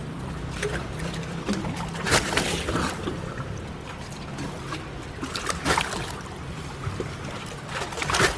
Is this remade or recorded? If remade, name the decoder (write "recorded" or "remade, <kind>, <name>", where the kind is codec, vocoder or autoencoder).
remade, vocoder, BigVGAN v2